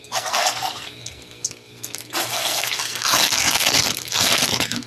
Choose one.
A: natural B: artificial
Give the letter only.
B